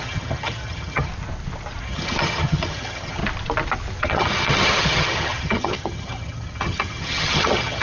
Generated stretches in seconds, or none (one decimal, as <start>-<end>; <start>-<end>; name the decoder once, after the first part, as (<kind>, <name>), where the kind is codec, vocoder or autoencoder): 0.0-1.1 (vocoder, HiFi-GAN); 1.8-3.2; 4.0-7.8